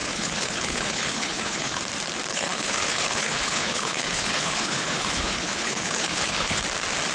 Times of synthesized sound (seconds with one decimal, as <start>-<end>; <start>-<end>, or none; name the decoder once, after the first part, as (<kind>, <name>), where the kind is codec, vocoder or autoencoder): 0.0-1.8 (codec, HILCodec); 2.3-6.6